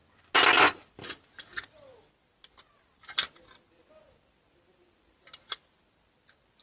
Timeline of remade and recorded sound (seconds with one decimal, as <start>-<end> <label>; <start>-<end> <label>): 0.0-6.6 recorded